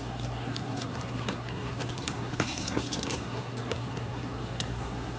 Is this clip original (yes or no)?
no